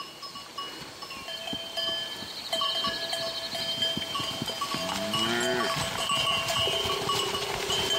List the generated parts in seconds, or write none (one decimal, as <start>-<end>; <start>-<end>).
none